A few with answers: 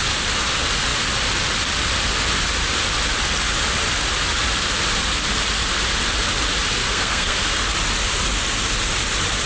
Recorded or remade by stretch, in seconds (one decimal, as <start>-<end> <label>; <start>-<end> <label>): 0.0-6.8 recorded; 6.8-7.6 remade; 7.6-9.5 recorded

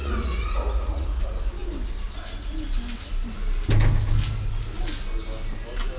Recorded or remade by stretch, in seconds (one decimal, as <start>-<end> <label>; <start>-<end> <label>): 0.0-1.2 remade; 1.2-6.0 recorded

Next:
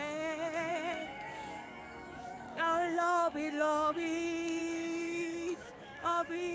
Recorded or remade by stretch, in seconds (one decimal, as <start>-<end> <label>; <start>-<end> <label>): 0.0-6.5 remade